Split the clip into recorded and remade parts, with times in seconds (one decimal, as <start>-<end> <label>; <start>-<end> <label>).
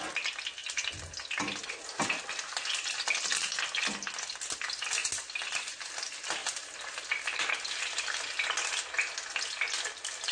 0.0-6.4 recorded; 6.4-7.5 remade; 7.5-10.3 recorded